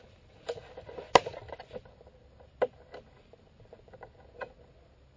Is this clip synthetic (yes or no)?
no